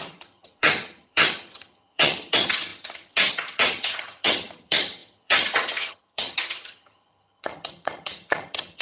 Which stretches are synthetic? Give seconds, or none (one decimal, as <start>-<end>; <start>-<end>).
0.0-8.8